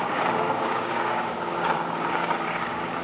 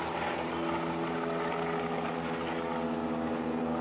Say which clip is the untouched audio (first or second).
second